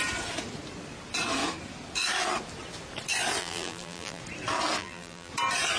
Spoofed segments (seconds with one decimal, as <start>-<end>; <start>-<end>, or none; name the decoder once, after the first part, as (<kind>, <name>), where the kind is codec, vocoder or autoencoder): 3.4-4.2 (vocoder, BigVGAN v2); 4.8-5.3